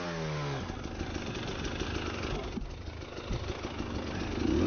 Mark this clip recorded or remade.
recorded